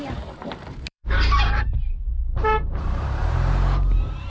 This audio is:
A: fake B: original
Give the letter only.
A